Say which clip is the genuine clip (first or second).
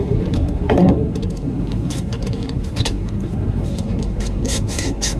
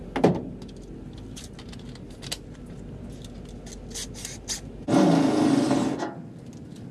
second